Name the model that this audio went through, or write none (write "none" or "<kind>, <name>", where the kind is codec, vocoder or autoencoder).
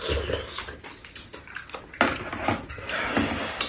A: none